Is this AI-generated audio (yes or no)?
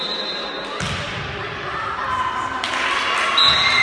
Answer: no